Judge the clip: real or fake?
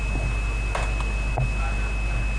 real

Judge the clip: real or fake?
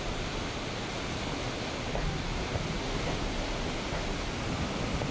real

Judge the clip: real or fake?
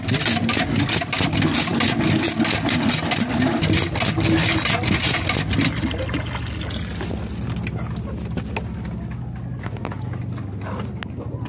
real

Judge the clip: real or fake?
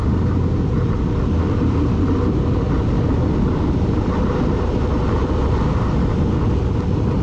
real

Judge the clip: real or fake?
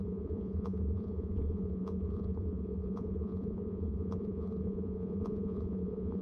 fake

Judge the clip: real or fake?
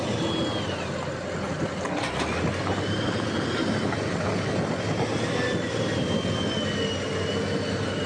real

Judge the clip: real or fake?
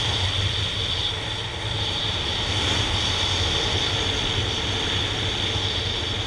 real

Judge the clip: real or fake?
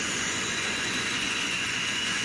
fake